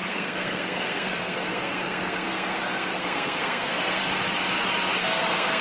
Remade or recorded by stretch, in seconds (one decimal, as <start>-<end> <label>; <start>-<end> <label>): 0.0-4.0 remade; 4.0-5.0 recorded; 5.0-5.6 remade